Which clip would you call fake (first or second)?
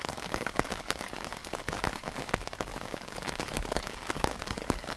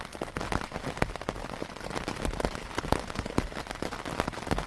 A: first